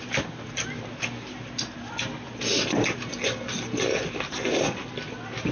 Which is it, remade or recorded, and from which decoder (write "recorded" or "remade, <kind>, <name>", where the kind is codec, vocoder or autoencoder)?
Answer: recorded